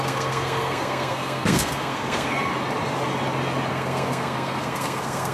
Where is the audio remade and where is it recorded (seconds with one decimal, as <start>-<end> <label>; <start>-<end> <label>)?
0.0-2.5 remade; 2.5-3.7 recorded; 3.7-5.3 remade

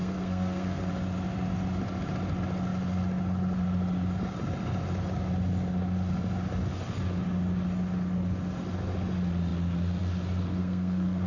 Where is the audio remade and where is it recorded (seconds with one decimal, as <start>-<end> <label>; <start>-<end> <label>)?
0.0-0.9 remade; 0.9-10.6 recorded; 10.6-11.3 remade

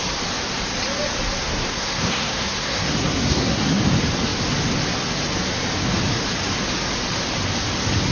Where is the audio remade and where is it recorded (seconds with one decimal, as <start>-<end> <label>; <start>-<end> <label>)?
0.0-1.4 recorded; 1.4-3.8 remade; 3.8-8.1 recorded

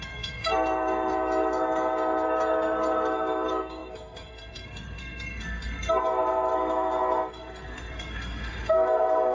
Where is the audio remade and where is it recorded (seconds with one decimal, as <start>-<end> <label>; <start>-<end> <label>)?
0.0-9.3 remade

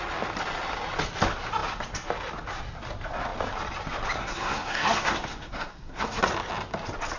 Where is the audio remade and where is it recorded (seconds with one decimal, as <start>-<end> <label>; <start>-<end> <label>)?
0.0-4.2 recorded; 4.2-6.2 remade; 6.2-7.2 recorded

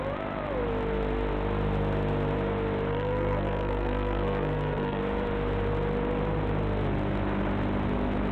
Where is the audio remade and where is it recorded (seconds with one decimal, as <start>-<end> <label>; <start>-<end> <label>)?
0.0-2.9 recorded; 2.9-5.0 remade; 5.0-8.3 recorded

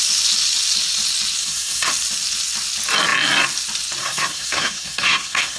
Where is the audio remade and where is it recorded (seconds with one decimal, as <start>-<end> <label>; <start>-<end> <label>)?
0.0-1.4 recorded; 1.4-1.9 remade; 1.9-4.0 recorded; 4.0-5.6 remade

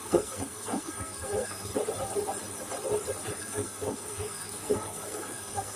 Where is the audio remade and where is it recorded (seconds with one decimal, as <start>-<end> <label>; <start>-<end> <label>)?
0.0-1.7 remade; 1.7-3.4 recorded; 3.4-5.8 remade